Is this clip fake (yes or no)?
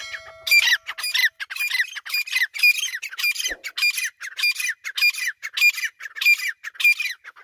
no